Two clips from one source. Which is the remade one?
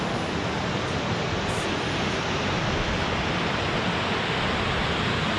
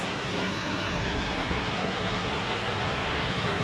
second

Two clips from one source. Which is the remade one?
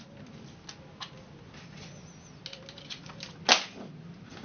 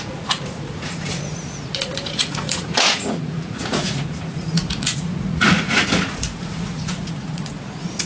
second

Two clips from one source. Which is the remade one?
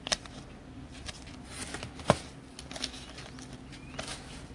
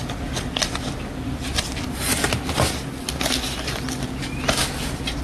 second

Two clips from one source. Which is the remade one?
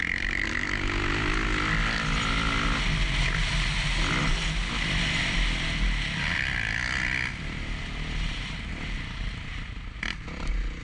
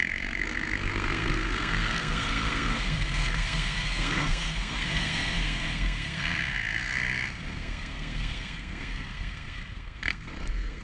second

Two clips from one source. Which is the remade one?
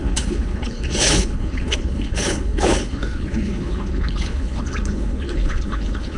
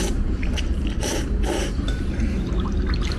first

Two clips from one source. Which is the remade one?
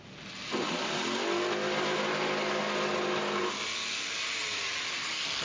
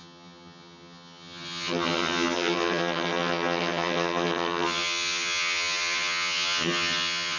second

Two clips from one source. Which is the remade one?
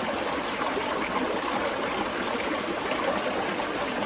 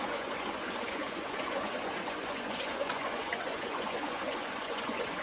second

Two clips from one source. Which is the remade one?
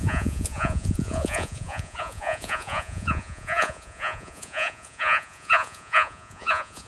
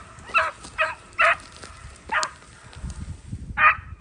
first